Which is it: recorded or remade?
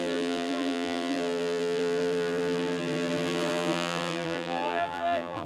remade